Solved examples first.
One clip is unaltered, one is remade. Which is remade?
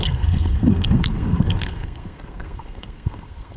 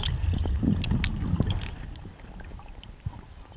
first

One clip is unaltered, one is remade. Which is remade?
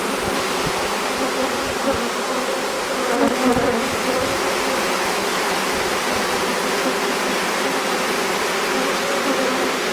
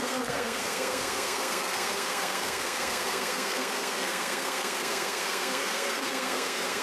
second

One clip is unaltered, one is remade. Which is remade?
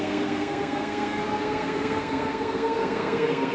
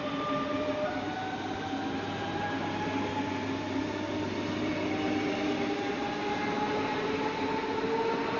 first